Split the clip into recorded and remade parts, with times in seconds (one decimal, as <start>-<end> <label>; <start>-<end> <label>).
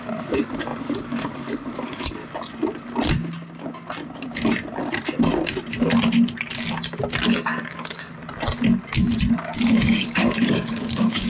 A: 0.0-2.2 remade; 2.2-7.2 recorded; 7.2-8.2 remade; 8.2-9.3 recorded; 9.3-11.3 remade